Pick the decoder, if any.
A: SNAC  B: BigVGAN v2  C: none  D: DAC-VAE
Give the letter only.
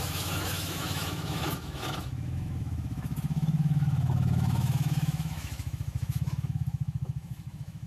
D